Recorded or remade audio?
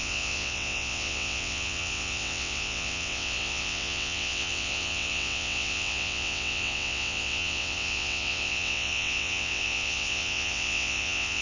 remade